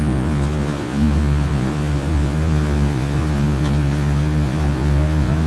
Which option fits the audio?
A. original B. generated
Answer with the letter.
B